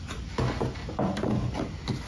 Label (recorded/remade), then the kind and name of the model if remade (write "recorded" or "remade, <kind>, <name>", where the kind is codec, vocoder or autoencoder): recorded